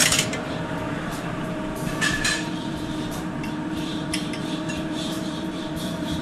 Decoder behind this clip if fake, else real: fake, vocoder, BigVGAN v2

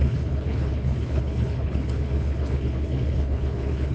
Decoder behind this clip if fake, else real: fake, codec, HILCodec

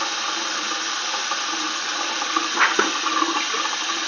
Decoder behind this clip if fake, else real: real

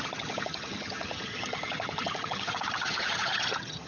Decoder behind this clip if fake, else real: fake, vocoder, HiFi-GAN